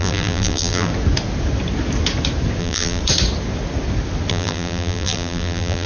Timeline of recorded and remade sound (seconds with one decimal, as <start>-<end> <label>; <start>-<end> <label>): 0.0-0.9 remade; 0.9-2.6 recorded; 2.6-3.0 remade; 3.0-4.3 recorded; 4.3-5.9 remade